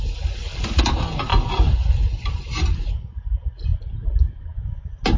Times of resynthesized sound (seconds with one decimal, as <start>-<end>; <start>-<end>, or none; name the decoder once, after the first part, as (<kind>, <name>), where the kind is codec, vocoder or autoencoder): none